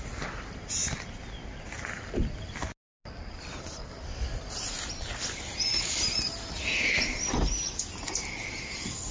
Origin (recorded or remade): recorded